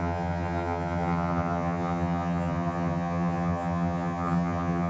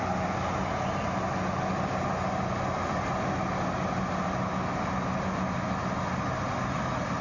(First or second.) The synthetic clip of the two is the first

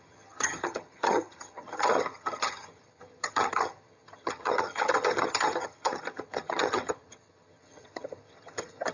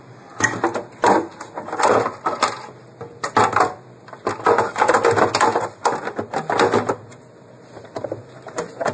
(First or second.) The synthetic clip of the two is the first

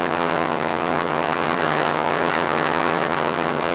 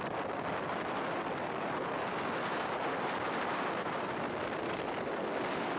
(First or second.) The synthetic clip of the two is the first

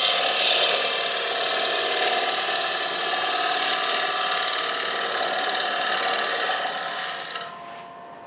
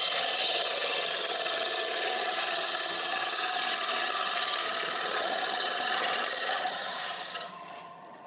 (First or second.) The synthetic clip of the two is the second